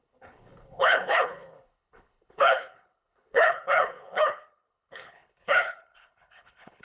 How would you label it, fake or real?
fake